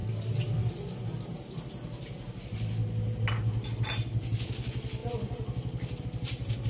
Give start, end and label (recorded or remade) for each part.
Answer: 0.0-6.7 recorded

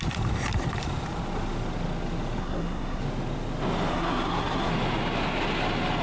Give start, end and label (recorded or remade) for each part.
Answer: 0.0-2.4 recorded; 2.4-3.0 remade; 3.0-3.9 recorded; 3.9-4.7 remade; 4.7-6.0 recorded

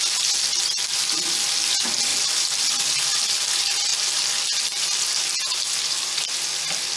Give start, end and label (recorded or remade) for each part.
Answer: 0.0-7.0 recorded

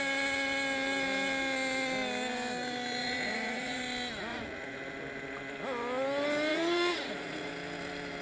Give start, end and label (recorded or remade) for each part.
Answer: 0.0-3.0 recorded; 3.0-3.8 remade; 3.8-4.3 recorded; 4.3-4.8 remade; 4.8-6.5 recorded; 6.5-7.5 remade; 7.5-8.2 recorded

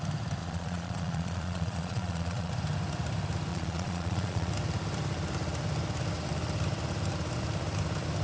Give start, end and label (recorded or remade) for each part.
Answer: 0.0-0.4 recorded; 0.4-2.5 remade; 2.5-3.5 recorded; 3.5-4.5 remade; 4.5-8.2 recorded

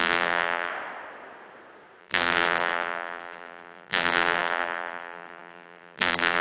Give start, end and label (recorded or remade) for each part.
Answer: 0.0-0.7 remade; 0.7-2.0 recorded; 2.0-6.4 remade